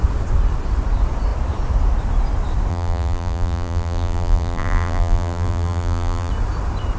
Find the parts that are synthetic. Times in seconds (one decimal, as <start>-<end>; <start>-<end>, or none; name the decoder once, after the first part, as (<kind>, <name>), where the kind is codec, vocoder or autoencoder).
2.7-6.3 (vocoder, BigVGAN v2)